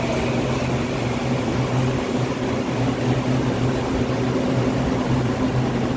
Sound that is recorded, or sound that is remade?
recorded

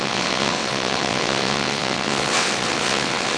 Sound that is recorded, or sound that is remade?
remade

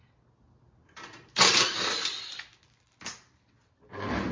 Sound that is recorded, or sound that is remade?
recorded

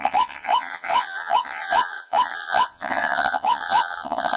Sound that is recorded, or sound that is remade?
remade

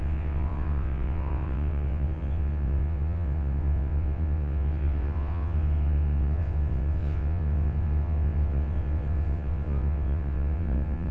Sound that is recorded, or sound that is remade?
remade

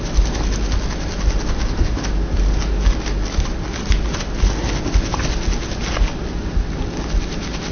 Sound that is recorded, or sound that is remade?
recorded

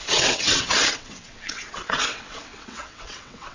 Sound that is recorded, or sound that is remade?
remade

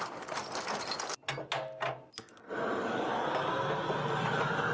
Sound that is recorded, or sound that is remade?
recorded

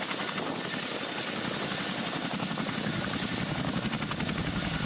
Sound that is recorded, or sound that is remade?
recorded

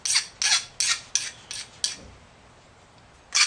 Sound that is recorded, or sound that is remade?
recorded